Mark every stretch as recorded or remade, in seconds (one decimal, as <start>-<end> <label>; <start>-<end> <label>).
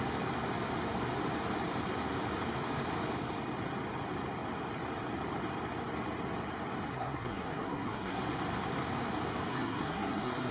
0.0-6.9 recorded; 6.9-8.2 remade; 8.2-9.5 recorded; 9.5-10.5 remade